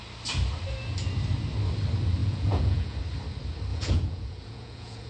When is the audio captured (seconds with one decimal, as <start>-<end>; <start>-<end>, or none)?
0.0-2.2; 3.0-3.7